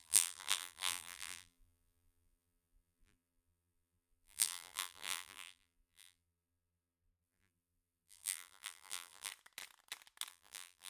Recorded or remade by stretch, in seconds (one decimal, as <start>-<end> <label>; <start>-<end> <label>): 0.0-9.3 remade; 9.3-10.3 recorded; 10.3-10.9 remade